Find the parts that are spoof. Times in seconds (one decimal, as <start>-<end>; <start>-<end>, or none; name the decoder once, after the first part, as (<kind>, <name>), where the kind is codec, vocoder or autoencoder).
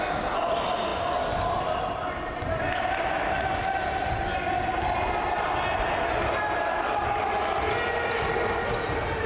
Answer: none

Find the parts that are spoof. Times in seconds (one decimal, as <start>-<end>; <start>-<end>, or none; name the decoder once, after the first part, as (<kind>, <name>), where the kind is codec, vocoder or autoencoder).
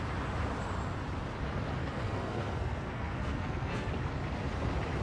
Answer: 1.8-3.9 (codec, SNAC)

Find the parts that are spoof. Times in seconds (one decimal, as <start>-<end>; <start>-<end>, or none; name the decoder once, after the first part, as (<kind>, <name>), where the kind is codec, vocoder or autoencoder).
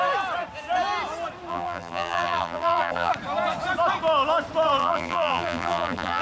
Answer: 1.5-3.1 (vocoder, BigVGAN v2); 4.8-6.2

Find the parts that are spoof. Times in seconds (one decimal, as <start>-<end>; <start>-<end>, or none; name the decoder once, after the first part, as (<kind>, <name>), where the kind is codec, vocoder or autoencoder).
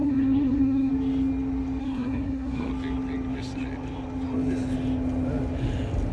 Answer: 0.0-0.9 (codec, SNAC); 1.8-2.7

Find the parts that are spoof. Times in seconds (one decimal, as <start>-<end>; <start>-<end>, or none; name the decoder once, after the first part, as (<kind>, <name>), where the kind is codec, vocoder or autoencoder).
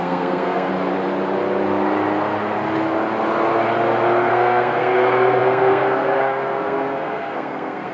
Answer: 0.0-0.7 (codec, SNAC); 4.3-7.9